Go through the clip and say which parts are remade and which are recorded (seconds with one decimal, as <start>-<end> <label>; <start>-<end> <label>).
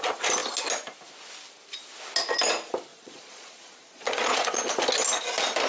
0.0-2.9 recorded; 2.9-4.7 remade; 4.7-5.7 recorded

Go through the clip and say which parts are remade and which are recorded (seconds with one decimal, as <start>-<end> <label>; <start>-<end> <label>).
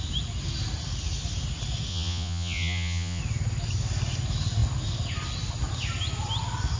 0.0-1.9 recorded; 1.9-3.2 remade; 3.2-6.8 recorded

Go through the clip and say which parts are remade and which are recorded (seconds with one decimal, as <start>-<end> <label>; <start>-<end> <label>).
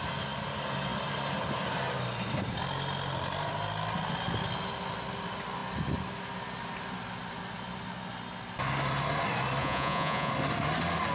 0.0-9.6 recorded; 9.6-10.3 remade; 10.3-11.1 recorded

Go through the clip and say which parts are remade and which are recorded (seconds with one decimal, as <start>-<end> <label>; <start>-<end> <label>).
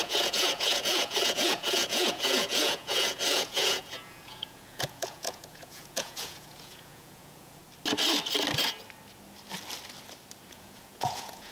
0.0-7.6 remade; 7.6-10.5 recorded; 10.5-11.5 remade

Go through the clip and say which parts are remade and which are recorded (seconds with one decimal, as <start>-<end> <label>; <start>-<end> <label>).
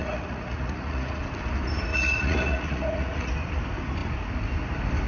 0.0-1.2 remade; 1.2-1.9 recorded; 1.9-3.3 remade; 3.3-5.1 recorded